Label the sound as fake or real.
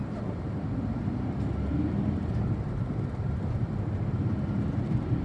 fake